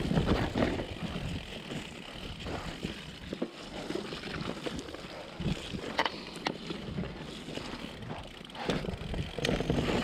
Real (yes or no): yes